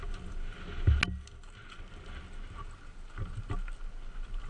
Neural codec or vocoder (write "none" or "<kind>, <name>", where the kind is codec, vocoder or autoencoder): none